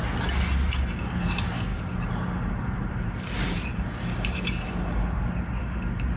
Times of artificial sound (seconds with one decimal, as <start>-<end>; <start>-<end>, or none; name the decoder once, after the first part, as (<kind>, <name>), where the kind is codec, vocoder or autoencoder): 1.7-5.2 (vocoder, BigVGAN v2)